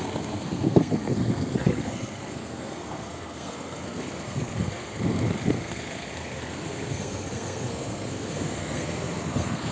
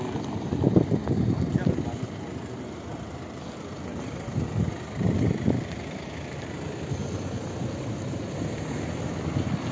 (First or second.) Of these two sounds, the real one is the second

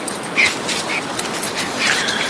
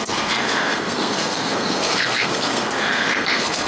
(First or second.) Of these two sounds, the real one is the first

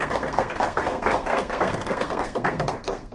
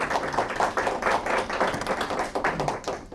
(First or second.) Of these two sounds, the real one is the second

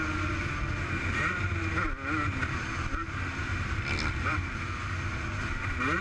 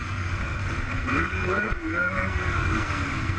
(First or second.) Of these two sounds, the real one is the first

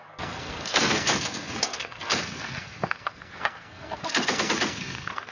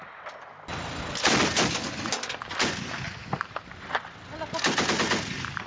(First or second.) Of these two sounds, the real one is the second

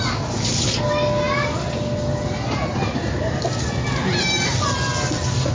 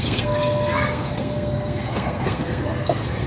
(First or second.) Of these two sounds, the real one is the first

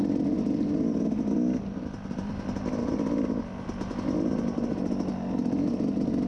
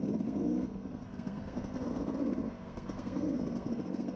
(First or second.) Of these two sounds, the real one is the first